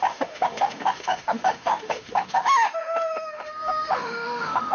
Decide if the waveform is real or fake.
fake